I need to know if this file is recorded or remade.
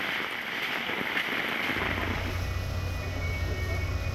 recorded